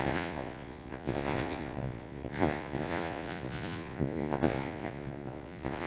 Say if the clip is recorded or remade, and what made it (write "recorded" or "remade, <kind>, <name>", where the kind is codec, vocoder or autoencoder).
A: remade, vocoder, Vocos